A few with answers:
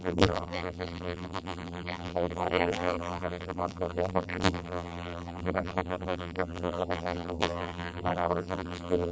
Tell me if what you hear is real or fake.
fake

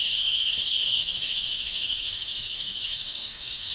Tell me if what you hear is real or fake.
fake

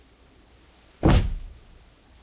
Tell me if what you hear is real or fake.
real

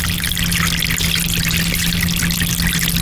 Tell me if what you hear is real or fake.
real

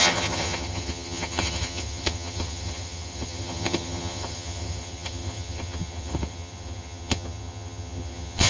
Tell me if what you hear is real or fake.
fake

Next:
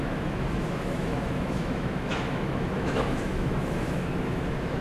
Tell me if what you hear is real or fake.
fake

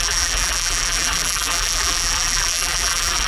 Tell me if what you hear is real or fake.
fake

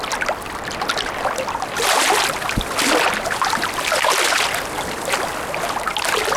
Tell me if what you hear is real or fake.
real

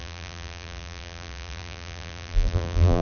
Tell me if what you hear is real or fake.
fake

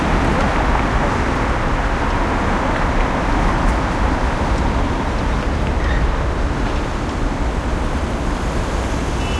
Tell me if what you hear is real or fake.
real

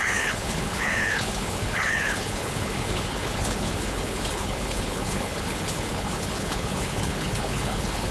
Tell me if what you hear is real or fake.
fake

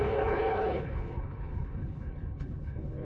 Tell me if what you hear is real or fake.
fake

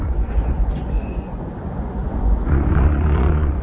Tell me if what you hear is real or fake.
fake